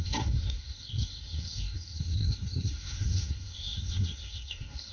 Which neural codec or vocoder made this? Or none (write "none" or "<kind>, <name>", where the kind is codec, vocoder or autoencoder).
codec, SNAC